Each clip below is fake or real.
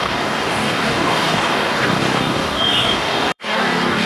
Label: fake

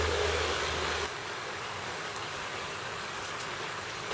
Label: fake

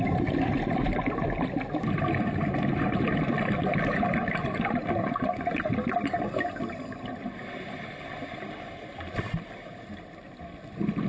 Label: real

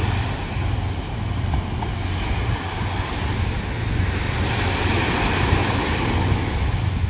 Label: real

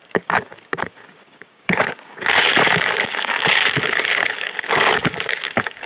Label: fake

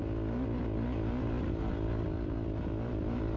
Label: real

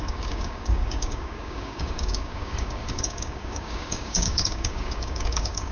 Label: fake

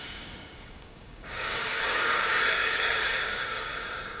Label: fake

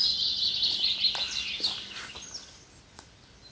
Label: real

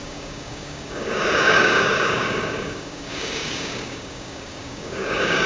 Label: fake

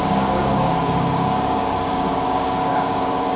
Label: fake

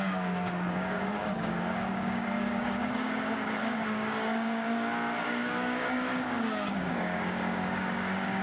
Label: fake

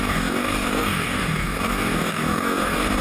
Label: fake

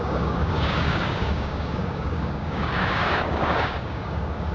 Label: fake